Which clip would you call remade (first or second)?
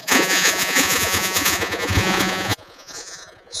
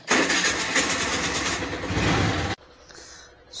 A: first